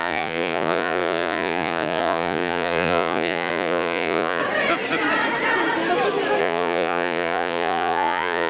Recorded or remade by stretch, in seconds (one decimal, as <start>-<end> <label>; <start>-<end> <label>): 0.0-4.4 remade; 4.4-6.4 recorded; 6.4-8.5 remade